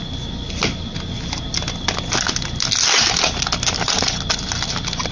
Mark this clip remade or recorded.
recorded